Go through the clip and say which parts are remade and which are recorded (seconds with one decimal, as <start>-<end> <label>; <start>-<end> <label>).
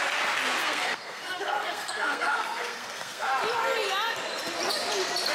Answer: 0.0-0.6 recorded; 0.6-3.3 remade; 3.3-5.3 recorded